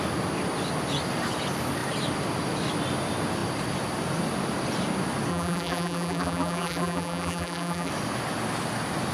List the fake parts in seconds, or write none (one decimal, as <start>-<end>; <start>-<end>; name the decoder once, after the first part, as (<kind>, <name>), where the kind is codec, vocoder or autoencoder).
5.3-7.9 (vocoder, BigVGAN v2)